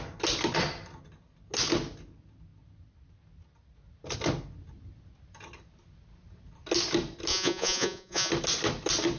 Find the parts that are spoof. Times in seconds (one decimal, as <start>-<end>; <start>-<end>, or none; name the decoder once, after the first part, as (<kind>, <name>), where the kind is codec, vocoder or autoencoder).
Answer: 7.3-8.3 (vocoder, Vocos)